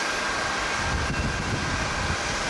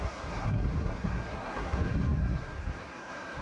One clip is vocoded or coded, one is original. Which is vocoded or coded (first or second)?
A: second